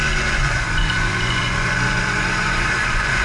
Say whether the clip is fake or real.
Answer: fake